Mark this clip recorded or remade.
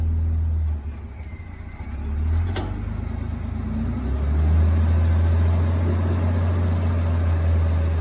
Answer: recorded